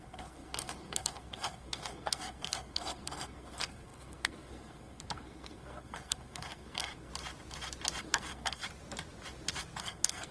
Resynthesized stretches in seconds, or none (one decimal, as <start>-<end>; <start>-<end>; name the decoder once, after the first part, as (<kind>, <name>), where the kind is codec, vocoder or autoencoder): 0.0-7.1 (codec, SNAC); 8.0-8.6; 9.8-10.3